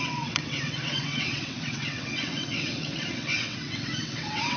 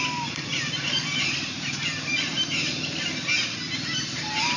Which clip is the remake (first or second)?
first